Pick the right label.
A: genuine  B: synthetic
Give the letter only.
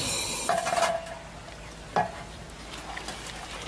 A